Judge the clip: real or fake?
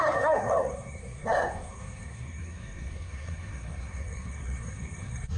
fake